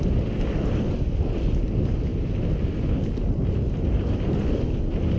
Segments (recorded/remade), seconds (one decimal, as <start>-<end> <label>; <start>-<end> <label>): 0.0-5.2 recorded